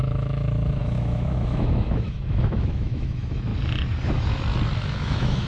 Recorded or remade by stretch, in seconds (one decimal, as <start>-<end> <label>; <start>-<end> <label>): 0.0-3.5 remade; 3.5-4.8 recorded; 4.8-5.5 remade